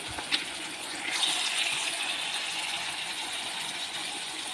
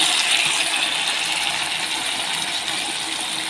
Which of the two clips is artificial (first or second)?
first